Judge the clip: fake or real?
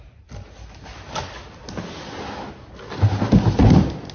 real